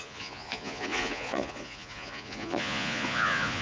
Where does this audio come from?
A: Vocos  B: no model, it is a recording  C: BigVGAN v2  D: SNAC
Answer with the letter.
A